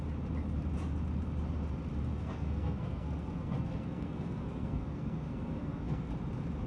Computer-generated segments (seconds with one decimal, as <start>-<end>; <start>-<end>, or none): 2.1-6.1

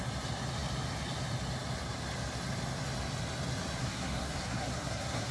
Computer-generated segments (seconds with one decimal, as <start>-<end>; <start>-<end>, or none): 3.8-5.3

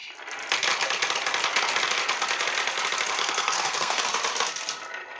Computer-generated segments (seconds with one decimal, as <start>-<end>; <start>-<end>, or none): 3.2-4.0

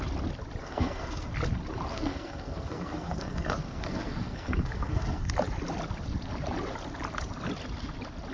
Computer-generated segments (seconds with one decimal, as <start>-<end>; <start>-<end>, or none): 0.6-1.3; 1.9-5.3

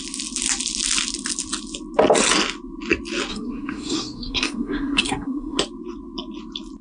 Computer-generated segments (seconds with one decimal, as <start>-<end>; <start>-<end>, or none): 3.3-5.6

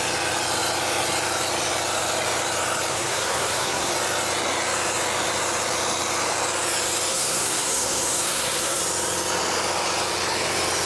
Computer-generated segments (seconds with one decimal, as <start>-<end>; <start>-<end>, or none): 2.9-3.9; 7.1-8.8

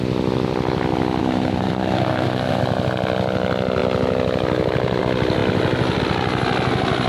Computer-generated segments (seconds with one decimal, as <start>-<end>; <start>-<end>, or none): 1.2-2.6